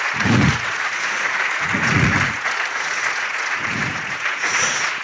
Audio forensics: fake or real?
fake